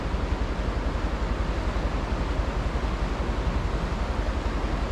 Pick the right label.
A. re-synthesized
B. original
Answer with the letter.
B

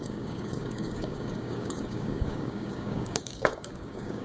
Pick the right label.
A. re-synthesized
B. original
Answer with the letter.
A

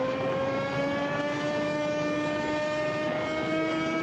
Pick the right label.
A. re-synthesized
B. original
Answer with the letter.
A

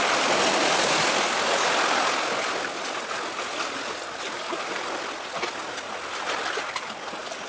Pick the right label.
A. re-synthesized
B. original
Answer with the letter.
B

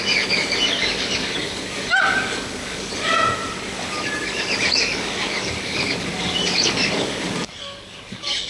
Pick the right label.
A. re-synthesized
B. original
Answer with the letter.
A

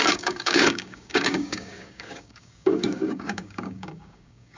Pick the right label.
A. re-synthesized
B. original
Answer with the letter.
A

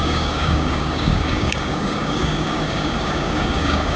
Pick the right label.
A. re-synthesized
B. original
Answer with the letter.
A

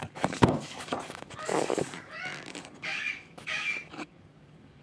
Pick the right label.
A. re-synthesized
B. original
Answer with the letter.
A